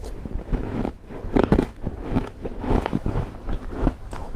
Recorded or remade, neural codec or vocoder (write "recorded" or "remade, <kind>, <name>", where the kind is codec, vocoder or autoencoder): remade, autoencoder, DAC-VAE